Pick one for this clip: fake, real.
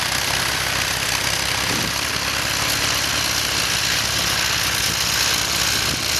real